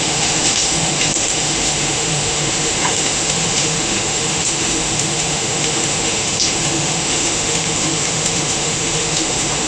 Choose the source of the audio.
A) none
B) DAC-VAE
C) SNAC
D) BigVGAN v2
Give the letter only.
B